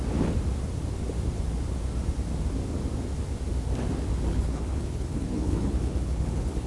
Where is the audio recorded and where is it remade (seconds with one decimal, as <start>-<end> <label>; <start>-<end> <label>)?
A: 0.0-4.3 recorded; 4.3-6.7 remade